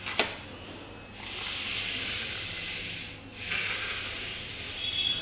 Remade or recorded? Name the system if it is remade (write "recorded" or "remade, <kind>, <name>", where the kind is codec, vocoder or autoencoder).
recorded